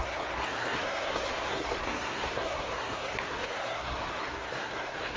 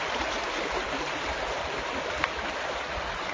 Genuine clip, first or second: second